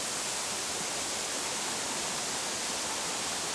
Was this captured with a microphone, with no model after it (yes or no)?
yes